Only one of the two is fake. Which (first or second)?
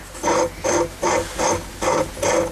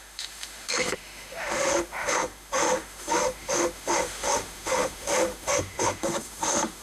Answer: second